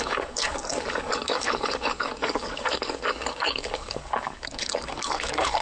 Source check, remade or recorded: remade